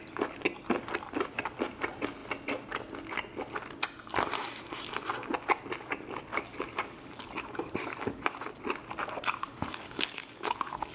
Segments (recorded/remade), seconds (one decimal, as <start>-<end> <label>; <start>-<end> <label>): 0.0-6.3 recorded; 6.3-8.5 remade; 8.5-9.5 recorded; 9.5-10.9 remade